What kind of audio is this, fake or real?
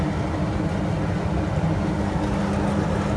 real